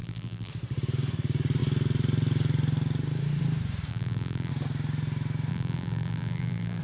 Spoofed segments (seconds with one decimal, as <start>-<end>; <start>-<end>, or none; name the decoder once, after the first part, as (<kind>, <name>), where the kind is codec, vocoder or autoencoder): 0.0-0.5 (vocoder, BigVGAN v2); 3.9-4.5; 5.5-6.8